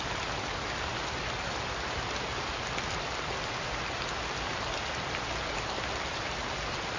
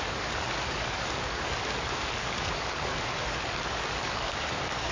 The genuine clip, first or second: first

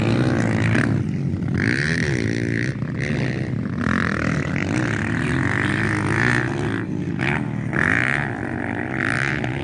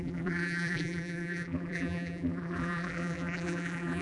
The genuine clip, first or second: first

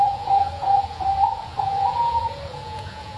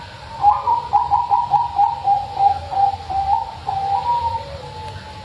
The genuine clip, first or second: second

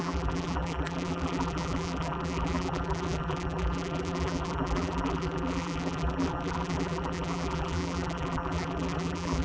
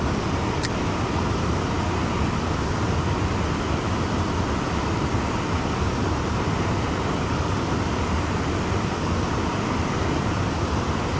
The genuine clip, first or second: second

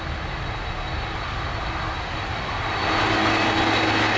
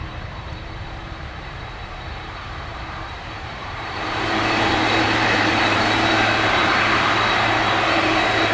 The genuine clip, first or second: first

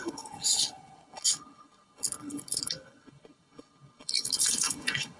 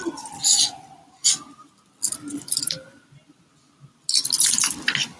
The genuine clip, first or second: second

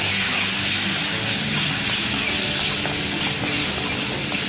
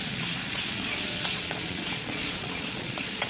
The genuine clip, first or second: first